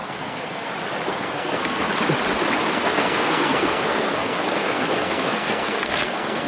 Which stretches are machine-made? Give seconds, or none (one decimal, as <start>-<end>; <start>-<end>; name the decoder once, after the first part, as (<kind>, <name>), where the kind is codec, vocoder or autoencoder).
0.0-0.7 (codec, SNAC); 1.1-1.9; 2.7-6.5

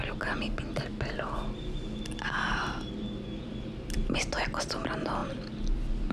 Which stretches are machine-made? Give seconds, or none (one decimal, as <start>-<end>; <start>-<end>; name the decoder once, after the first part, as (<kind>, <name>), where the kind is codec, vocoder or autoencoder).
none

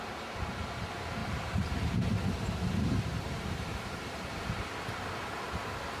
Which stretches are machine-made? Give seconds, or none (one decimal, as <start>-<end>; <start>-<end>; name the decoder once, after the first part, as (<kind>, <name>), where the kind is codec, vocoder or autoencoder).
1.2-4.8 (vocoder, BigVGAN v2)

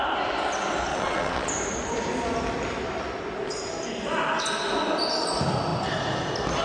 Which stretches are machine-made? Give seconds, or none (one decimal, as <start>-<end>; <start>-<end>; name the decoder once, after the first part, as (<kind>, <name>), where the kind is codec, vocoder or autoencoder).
0.9-1.5 (vocoder, WaveNeXt)

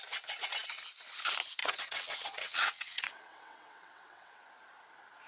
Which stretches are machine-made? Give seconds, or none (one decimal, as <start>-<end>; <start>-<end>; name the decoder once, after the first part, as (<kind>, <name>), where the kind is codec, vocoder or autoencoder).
1.6-4.4 (vocoder, WaveNeXt)

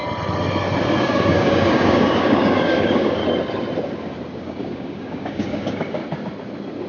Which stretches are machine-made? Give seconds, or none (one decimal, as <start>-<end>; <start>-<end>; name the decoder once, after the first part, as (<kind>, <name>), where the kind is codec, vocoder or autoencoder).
1.0-3.2 (codec, DAC); 4.4-6.0

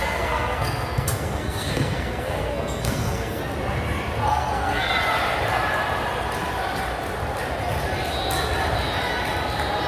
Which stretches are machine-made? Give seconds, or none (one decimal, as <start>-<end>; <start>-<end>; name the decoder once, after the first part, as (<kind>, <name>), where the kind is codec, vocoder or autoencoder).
0.0-3.4 (codec, SNAC); 4.3-4.9

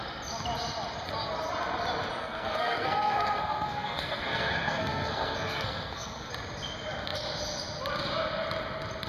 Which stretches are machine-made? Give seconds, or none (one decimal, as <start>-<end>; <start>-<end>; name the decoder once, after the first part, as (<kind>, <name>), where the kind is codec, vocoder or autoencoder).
2.2-6.3 (codec, SNAC)